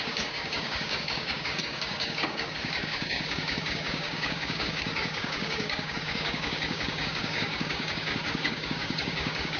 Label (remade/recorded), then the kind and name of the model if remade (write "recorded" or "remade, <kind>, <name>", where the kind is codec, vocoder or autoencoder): remade, codec, DAC